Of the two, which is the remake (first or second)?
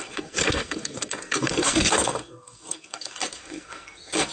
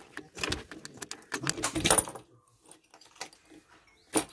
first